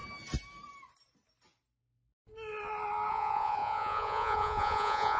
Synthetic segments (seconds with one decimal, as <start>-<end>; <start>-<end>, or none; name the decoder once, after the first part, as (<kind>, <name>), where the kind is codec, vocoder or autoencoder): 3.1-5.2 (vocoder, Vocos)